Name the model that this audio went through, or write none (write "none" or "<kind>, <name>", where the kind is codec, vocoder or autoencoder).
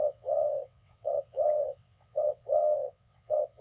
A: vocoder, WaveNeXt